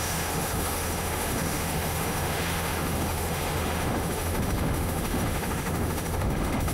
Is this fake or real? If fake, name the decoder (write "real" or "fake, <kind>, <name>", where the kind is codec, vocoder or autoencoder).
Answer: fake, autoencoder, DAC-VAE